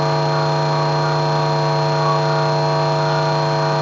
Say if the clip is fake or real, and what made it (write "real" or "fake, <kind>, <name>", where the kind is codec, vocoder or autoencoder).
real